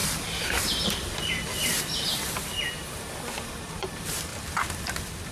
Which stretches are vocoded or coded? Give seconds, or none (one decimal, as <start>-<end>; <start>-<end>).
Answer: 2.7-4.3